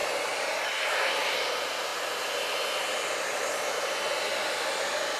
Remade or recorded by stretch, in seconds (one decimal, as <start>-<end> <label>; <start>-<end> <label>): 0.0-1.2 remade; 1.2-5.2 recorded